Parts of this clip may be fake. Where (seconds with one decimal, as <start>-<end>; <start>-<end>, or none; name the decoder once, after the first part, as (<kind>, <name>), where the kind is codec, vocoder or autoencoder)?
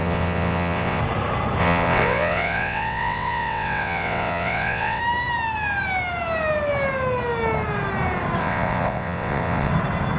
0.0-1.0 (vocoder, WaveNeXt); 1.6-5.0; 8.4-9.7